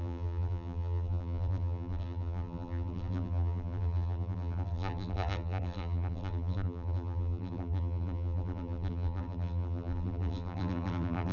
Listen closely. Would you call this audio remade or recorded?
remade